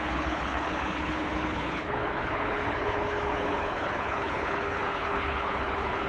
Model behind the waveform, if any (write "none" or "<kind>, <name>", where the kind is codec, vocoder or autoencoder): codec, HILCodec